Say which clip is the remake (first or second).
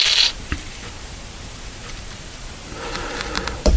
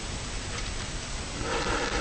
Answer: first